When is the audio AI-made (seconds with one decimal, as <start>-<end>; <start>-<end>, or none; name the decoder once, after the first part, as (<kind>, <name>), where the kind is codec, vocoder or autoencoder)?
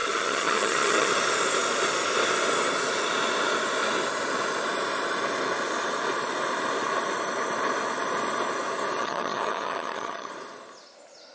0.0-1.1 (vocoder, HiFi-GAN); 9.0-10.3